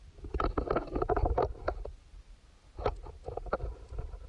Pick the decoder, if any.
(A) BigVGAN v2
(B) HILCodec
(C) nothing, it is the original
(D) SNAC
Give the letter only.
C